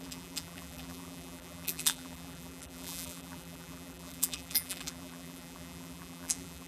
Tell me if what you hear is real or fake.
fake